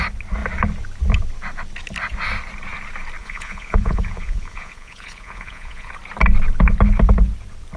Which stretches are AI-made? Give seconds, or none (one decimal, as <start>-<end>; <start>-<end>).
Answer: 3.2-5.9